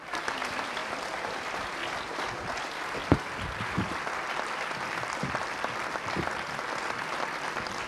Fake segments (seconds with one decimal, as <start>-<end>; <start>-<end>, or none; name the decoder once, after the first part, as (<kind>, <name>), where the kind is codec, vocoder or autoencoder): none